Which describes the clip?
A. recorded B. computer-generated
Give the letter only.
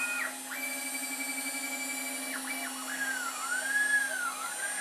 A